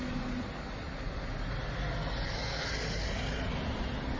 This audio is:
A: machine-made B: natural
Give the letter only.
B